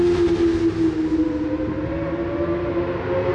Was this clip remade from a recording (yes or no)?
no